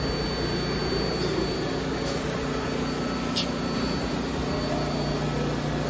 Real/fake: real